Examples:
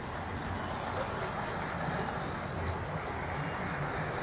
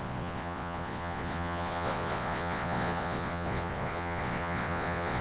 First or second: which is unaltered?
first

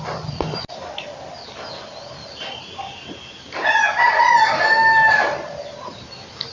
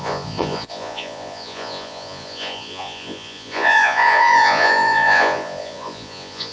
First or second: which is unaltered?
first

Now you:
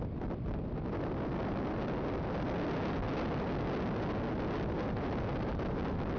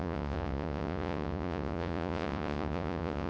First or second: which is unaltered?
first